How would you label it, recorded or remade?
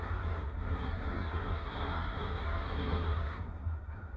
remade